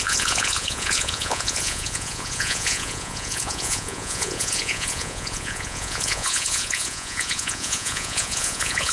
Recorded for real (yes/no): no